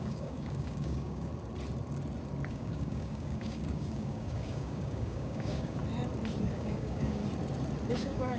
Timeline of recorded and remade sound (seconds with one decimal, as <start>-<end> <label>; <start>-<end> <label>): 0.0-1.3 remade; 1.3-2.5 recorded; 2.5-5.8 remade; 5.8-6.5 recorded; 6.5-7.2 remade; 7.2-7.9 recorded; 7.9-8.4 remade